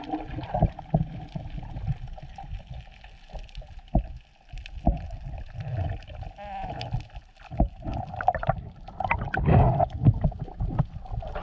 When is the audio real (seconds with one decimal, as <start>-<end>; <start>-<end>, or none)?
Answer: 0.0-11.4